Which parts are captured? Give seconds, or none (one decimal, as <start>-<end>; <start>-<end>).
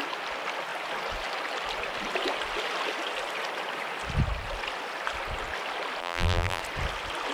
0.0-6.0; 6.6-7.3